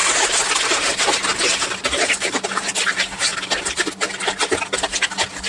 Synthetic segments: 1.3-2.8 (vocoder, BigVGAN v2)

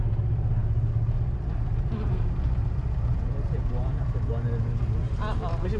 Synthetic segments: none

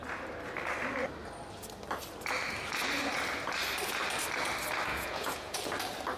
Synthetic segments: 4.9-5.6 (vocoder, Vocos)